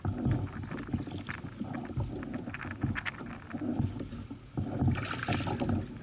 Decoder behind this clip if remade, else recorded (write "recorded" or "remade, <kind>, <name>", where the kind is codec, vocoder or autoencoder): recorded